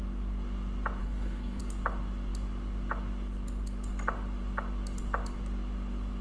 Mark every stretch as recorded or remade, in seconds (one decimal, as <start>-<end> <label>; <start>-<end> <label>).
0.0-1.0 recorded; 1.0-1.6 remade; 1.6-6.2 recorded